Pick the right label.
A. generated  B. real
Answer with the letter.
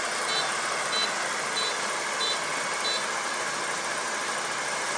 B